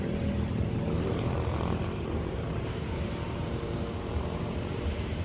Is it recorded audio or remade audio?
remade